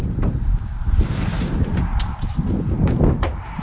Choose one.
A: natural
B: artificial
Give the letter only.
B